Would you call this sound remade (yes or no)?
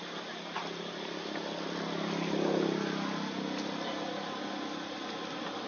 no